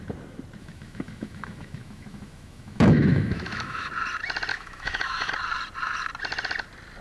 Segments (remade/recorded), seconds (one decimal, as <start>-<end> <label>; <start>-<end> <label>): 0.0-0.6 recorded; 0.6-3.9 remade; 3.9-4.5 recorded; 4.5-5.3 remade; 5.3-7.0 recorded